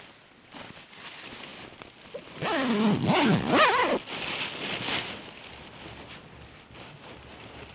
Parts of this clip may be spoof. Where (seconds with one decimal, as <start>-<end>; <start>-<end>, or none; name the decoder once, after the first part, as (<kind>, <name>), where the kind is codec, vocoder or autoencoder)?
none